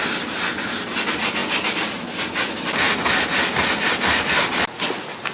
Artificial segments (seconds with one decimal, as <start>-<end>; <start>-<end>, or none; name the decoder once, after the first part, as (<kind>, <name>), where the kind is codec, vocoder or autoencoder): none